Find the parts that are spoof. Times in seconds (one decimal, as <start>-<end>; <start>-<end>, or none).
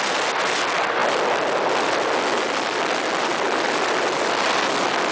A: none